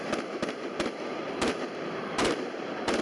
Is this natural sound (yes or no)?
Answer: no